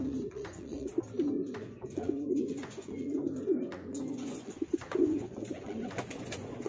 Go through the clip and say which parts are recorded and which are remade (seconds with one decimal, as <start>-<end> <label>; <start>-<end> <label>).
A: 0.0-0.9 remade; 0.9-1.6 recorded; 1.6-6.7 remade